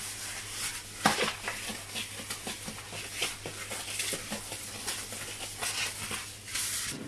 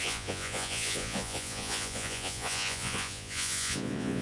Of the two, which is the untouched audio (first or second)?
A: first